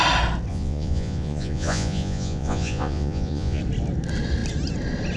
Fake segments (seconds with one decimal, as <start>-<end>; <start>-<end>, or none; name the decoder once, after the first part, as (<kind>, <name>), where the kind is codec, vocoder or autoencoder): 0.5-3.6 (vocoder, Vocos)